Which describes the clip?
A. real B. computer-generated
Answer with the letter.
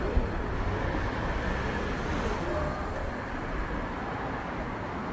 A